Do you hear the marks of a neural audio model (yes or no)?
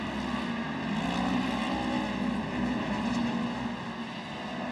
no